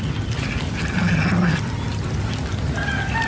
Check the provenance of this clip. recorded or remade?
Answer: recorded